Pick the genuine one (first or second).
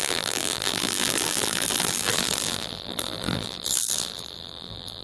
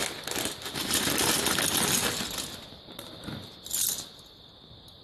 second